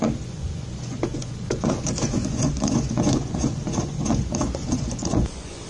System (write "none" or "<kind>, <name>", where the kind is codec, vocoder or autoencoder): vocoder, Vocos